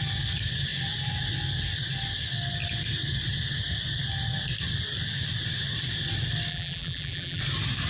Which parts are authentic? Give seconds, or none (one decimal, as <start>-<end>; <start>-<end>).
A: 0.0-6.5; 7.4-7.9